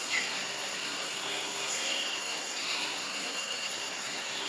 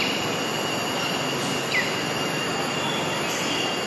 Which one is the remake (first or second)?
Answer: first